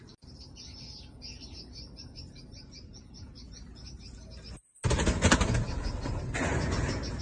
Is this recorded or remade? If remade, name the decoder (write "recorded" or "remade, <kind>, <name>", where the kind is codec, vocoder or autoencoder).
recorded